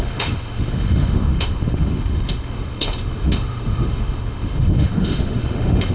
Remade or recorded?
remade